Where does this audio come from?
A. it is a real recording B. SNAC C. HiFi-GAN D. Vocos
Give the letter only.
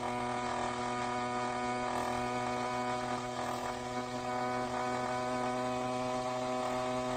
A